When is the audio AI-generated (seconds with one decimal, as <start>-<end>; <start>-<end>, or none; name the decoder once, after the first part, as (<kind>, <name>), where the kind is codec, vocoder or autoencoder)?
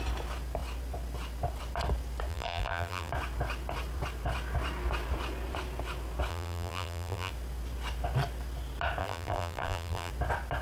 2.3-3.1 (vocoder, BigVGAN v2); 6.3-7.3; 9.0-10.1